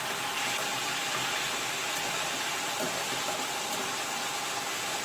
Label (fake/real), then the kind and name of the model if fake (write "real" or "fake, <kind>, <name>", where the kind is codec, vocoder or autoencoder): real